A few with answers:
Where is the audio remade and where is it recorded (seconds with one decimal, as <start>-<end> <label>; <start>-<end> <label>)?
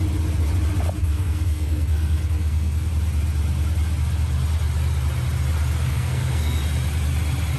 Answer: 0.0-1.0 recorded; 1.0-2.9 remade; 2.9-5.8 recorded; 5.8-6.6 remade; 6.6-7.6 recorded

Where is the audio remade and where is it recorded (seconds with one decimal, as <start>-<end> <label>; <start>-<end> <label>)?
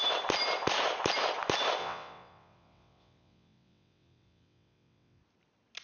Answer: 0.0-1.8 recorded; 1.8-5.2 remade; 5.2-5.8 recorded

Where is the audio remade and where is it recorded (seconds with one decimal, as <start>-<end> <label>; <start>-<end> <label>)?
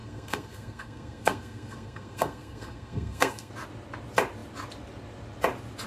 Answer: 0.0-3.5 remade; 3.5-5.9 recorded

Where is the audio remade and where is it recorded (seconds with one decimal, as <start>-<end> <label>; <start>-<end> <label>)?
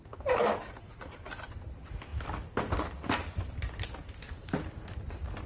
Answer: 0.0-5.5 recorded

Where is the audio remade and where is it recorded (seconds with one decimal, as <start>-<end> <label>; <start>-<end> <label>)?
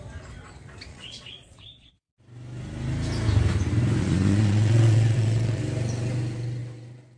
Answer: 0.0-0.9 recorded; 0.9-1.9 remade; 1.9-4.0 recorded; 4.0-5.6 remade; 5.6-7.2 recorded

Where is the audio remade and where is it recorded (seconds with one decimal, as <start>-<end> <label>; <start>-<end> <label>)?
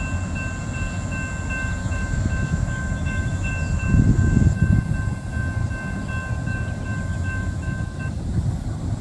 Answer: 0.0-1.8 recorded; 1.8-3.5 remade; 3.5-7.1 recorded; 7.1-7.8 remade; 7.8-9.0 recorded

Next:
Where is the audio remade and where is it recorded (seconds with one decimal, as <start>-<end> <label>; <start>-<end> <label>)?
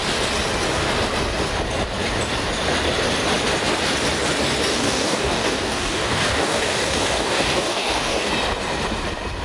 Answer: 0.0-4.7 recorded; 4.7-8.3 remade; 8.3-9.4 recorded